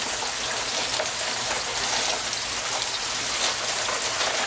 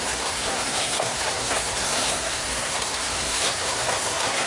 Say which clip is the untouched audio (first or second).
first